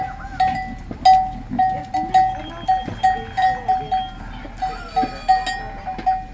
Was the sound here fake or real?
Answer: real